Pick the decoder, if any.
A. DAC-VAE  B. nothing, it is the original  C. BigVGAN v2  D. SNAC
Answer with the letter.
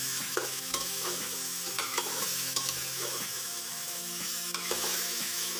A